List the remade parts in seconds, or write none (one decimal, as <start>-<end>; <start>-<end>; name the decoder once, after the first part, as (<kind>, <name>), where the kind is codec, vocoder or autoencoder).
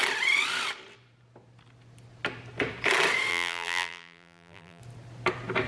3.3-4.8 (vocoder, BigVGAN v2)